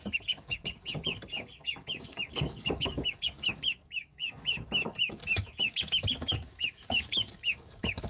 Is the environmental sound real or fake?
fake